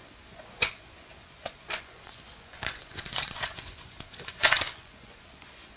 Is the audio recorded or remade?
remade